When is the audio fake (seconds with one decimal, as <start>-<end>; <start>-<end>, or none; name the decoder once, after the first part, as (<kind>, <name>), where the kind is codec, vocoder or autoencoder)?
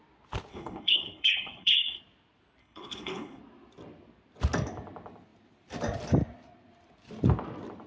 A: 0.5-2.0 (codec, HILCodec); 2.6-3.4